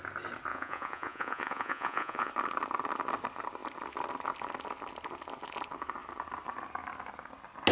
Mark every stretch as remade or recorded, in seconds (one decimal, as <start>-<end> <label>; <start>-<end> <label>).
0.0-0.5 recorded; 0.5-2.3 remade; 2.3-7.7 recorded